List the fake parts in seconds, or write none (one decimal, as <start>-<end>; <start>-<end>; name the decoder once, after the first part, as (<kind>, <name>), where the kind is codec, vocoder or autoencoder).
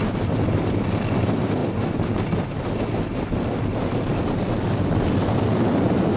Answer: none